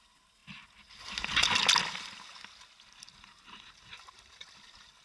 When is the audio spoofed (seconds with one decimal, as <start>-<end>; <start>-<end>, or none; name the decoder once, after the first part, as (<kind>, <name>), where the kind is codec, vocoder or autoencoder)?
none